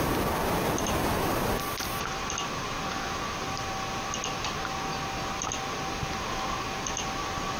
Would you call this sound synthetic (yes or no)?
no